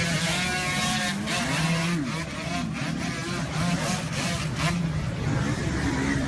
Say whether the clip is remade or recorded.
recorded